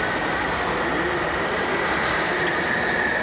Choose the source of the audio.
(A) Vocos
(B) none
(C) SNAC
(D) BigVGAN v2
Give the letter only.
B